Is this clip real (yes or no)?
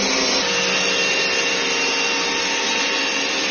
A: yes